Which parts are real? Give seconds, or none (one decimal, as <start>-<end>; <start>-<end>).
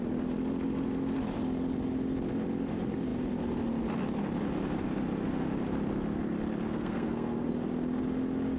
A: 0.0-6.7; 7.5-8.6